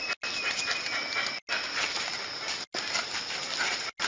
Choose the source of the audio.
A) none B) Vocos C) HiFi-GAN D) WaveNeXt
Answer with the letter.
A